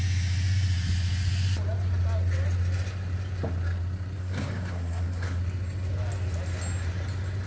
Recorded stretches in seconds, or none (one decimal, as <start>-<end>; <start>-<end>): 0.0-4.2; 5.4-7.5